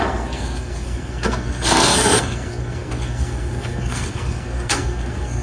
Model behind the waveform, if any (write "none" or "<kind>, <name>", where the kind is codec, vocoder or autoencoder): codec, SNAC